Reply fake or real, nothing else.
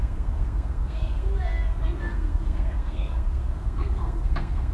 fake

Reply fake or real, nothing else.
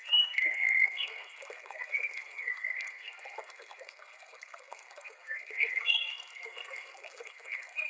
fake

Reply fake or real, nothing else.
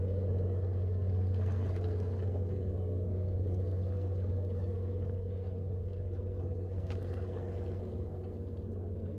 fake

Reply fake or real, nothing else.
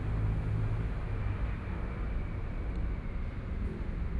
real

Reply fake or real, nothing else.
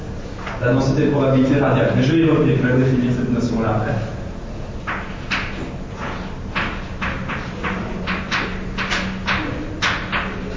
real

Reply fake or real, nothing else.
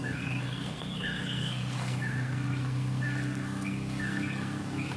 fake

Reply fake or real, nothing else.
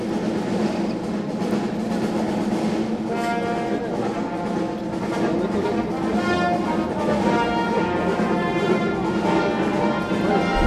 real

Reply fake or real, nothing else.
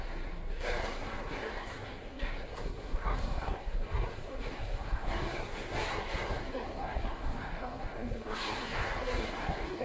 fake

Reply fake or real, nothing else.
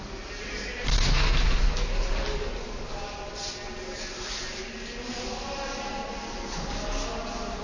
real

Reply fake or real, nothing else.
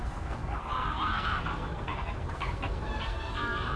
fake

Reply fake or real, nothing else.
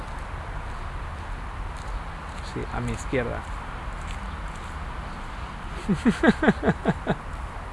real